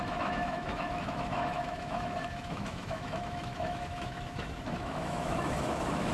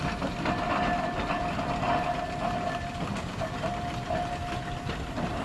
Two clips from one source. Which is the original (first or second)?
second